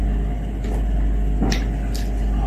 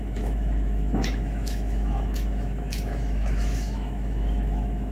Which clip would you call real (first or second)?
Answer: first